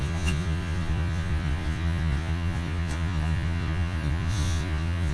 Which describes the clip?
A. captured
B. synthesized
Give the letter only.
B